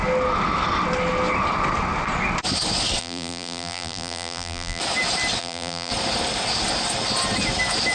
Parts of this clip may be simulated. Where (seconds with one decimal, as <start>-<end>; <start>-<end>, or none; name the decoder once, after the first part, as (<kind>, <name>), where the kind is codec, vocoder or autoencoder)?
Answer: 3.0-4.8 (vocoder, BigVGAN v2); 5.4-5.9

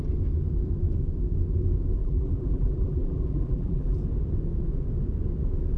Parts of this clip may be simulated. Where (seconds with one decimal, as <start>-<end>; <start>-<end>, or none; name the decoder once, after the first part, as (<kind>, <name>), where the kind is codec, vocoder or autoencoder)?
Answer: 2.0-4.0 (vocoder, BigVGAN v2)

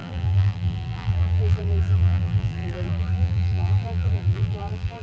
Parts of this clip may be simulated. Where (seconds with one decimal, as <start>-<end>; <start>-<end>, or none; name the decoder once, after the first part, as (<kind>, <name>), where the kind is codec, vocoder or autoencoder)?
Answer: 0.0-5.0 (vocoder, BigVGAN v2)

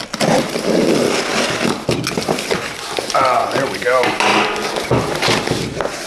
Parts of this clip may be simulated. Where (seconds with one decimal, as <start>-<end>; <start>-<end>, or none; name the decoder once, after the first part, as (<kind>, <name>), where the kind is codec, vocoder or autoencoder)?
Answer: none

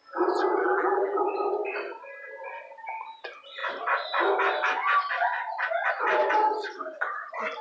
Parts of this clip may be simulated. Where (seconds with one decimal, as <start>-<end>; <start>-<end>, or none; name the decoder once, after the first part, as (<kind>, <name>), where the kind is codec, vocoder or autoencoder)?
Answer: 0.6-1.2 (vocoder, BigVGAN v2)

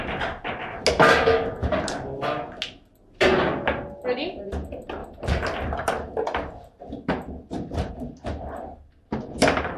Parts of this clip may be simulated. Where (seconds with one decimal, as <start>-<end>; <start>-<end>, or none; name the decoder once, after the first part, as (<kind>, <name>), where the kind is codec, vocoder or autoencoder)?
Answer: 5.0-7.9 (vocoder, BigVGAN v2)

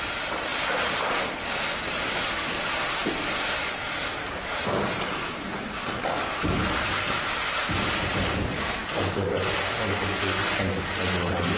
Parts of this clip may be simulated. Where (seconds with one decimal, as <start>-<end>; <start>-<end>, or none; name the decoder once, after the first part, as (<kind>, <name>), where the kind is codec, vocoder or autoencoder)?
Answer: none

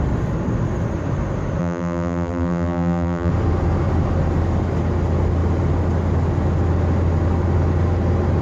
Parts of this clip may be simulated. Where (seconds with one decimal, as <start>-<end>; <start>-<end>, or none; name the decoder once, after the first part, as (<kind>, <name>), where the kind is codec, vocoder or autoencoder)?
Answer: 1.6-3.3 (vocoder, BigVGAN v2)